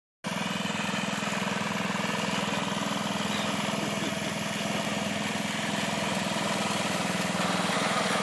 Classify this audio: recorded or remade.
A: recorded